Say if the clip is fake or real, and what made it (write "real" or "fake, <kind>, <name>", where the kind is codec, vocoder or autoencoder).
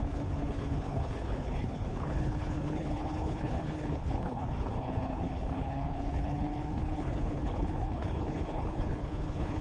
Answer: fake, codec, HILCodec